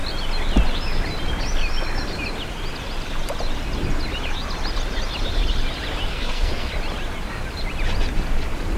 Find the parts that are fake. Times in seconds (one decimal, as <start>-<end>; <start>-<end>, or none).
6.1-6.7